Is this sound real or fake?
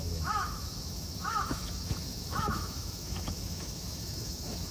fake